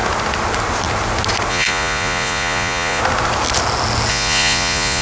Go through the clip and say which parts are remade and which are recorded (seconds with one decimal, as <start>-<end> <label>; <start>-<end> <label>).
0.0-1.5 recorded; 1.5-3.0 remade; 3.0-4.1 recorded; 4.1-5.0 remade